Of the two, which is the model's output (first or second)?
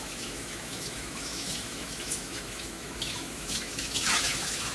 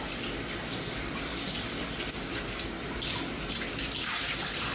first